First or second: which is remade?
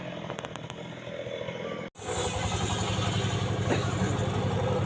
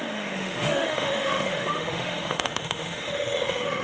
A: second